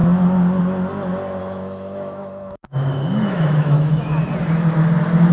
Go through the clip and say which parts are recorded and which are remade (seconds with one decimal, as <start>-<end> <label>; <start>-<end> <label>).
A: 0.0-1.4 recorded; 1.4-4.3 remade; 4.3-5.3 recorded